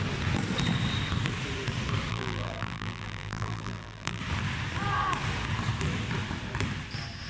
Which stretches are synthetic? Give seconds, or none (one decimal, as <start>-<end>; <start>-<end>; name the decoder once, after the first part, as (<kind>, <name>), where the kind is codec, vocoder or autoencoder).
2.1-4.2 (vocoder, BigVGAN v2)